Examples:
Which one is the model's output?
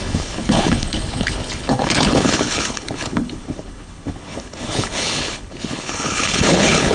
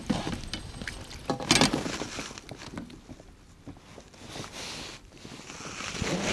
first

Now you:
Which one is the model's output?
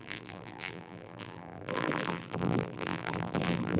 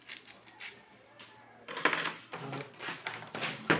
first